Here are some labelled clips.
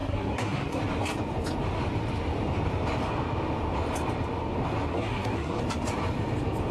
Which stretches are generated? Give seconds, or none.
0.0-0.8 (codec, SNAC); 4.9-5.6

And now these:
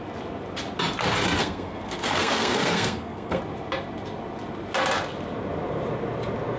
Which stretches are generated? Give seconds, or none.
1.4-3.4 (codec, SNAC)

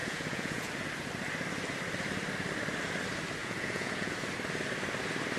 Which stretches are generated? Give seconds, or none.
0.0-0.7 (vocoder, Vocos); 3.4-4.1

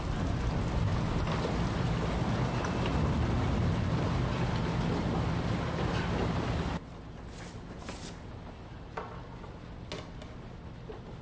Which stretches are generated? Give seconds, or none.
none

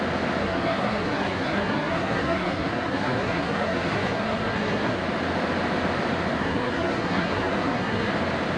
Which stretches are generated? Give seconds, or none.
0.4-5.0 (codec, SNAC); 6.4-8.1

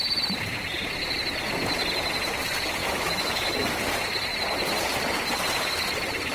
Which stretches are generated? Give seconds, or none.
2.8-3.8 (autoencoder, DAC-VAE)